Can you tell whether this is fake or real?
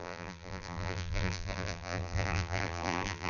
fake